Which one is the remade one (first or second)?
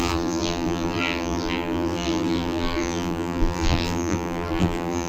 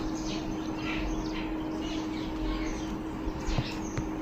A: first